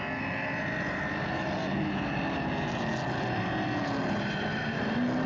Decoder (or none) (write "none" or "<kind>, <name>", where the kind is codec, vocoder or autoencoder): none